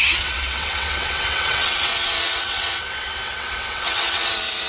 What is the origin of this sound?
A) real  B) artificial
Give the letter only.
B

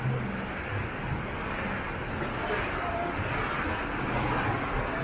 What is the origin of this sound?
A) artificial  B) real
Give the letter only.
B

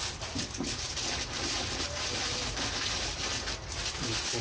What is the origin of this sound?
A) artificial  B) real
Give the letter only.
B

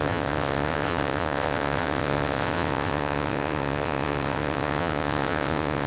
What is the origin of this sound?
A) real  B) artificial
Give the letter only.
B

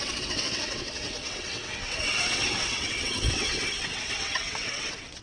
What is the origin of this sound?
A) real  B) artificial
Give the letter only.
B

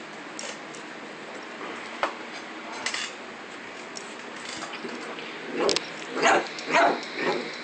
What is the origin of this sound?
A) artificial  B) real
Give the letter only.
B